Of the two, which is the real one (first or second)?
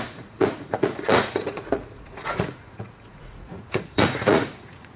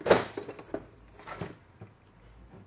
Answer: second